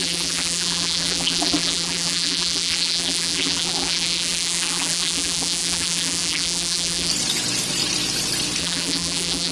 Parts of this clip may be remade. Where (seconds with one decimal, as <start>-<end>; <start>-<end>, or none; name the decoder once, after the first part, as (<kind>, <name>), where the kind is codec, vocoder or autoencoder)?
0.0-7.1 (vocoder, BigVGAN v2); 8.6-9.5